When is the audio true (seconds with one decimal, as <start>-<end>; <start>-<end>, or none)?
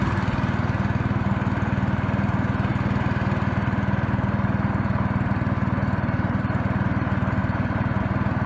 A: 0.0-8.5